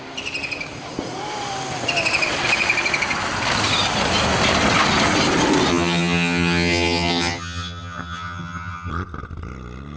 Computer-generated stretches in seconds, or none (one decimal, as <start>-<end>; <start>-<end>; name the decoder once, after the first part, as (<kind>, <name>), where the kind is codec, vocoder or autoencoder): 5.7-8.9 (vocoder, HiFi-GAN)